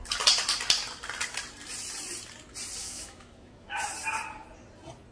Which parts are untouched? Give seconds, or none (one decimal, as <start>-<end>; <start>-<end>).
0.0-2.8; 3.8-5.1